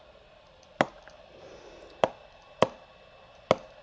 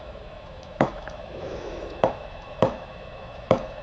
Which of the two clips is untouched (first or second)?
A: first